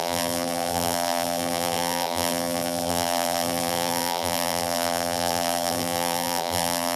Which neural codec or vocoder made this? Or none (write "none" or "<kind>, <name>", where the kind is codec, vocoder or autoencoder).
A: vocoder, BigVGAN v2